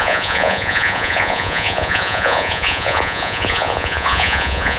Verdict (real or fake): fake